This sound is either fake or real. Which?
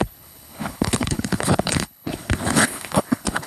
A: fake